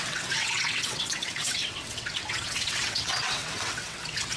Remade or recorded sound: remade